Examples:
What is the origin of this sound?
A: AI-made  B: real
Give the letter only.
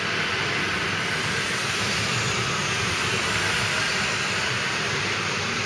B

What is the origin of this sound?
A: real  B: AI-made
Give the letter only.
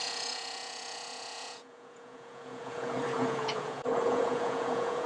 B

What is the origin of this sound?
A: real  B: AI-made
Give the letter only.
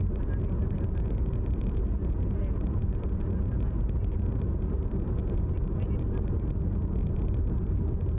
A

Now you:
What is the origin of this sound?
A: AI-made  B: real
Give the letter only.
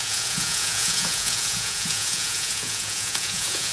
A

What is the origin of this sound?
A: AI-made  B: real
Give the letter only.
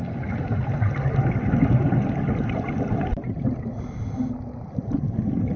B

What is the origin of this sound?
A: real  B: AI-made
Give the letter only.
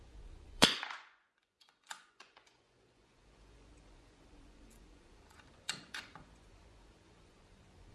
B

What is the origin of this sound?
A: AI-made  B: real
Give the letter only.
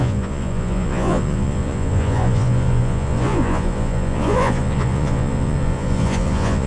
A